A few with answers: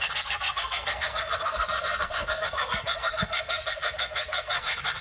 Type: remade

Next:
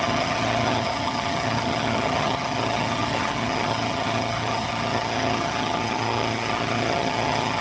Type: remade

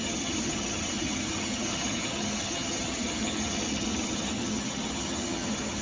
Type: remade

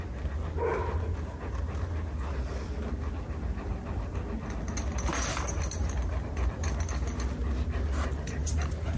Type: recorded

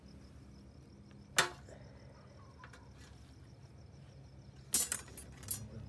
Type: recorded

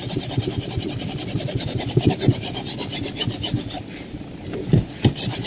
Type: remade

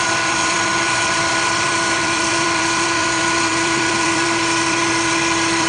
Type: remade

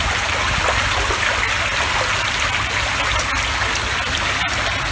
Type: recorded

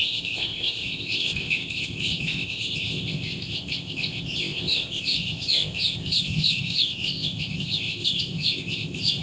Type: remade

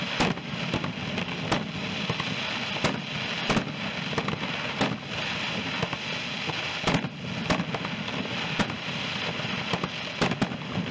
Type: recorded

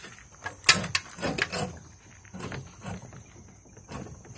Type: recorded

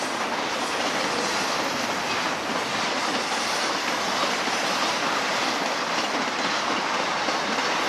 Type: recorded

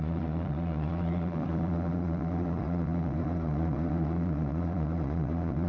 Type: remade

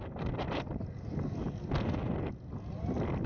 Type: recorded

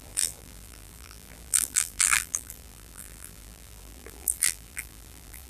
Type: remade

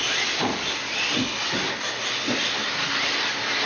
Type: recorded